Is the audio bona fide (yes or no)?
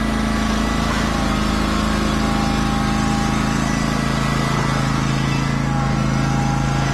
yes